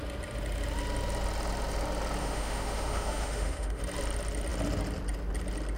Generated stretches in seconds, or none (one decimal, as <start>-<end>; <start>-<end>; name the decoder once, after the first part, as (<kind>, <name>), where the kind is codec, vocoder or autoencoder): 2.2-3.8 (autoencoder, DAC-VAE)